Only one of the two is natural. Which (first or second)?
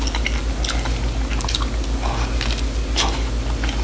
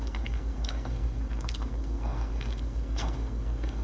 first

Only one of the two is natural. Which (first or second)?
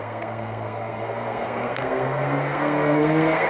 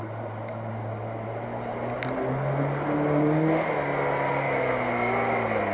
second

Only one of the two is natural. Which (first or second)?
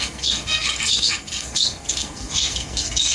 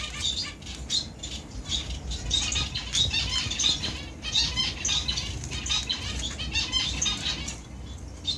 second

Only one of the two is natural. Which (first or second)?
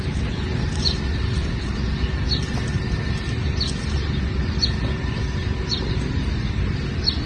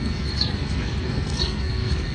first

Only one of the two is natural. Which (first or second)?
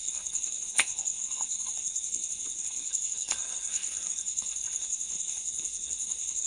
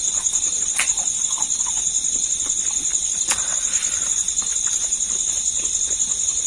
second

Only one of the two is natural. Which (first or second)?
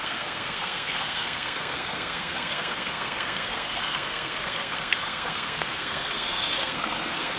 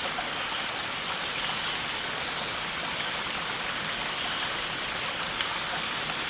second